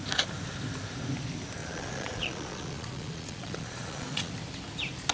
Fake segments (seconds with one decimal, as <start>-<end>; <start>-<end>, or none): 1.6-4.3